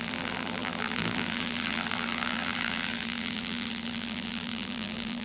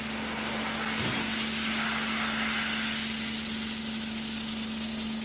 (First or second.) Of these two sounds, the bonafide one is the second